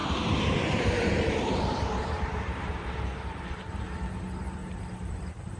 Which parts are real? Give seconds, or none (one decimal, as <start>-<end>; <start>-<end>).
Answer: 3.4-4.6